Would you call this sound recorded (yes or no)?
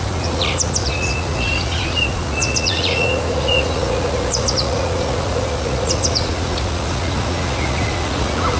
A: no